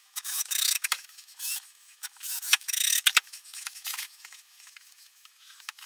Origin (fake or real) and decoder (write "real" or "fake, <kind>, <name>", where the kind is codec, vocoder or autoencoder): fake, autoencoder, DAC-VAE